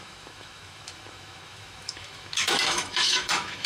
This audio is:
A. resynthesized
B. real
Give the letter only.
A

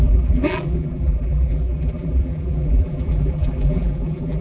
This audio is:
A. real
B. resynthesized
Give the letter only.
B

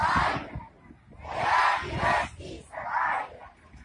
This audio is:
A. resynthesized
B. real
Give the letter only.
B